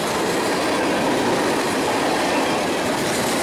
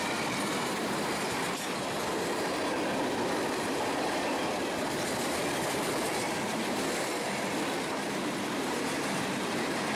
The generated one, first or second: second